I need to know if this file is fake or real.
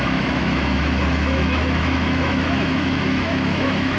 fake